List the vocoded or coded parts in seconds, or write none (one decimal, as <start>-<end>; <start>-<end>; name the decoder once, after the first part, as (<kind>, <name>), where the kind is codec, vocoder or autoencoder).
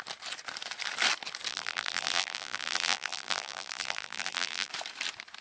1.5-4.7 (vocoder, BigVGAN v2)